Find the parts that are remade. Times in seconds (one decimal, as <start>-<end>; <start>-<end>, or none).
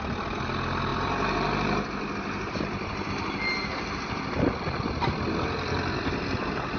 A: none